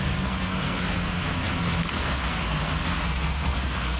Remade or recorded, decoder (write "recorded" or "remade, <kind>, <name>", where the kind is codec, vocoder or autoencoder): remade, codec, SNAC